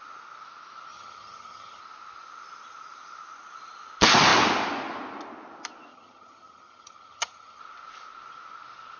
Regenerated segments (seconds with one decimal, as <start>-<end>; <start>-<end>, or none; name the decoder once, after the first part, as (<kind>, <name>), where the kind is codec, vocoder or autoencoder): 0.9-1.8 (vocoder, HiFi-GAN); 5.9-7.6

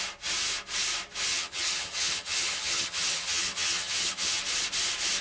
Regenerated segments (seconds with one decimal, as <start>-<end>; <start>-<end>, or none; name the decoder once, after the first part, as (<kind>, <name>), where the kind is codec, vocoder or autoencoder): 1.3-4.4 (vocoder, HiFi-GAN)

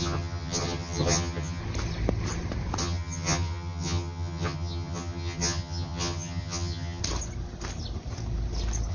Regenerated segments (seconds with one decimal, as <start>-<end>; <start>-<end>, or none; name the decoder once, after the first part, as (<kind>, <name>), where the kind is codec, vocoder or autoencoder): 0.0-1.6 (vocoder, HiFi-GAN); 2.8-7.0

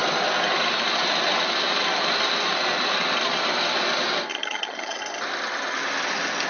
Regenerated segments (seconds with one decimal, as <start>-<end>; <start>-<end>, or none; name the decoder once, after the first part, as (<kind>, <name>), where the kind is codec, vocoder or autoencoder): 4.3-5.0 (vocoder, HiFi-GAN)